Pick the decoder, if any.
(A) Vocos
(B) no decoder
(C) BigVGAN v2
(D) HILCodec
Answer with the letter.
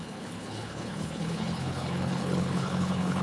D